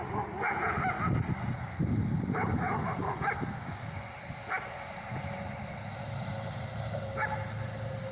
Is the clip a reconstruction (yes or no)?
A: no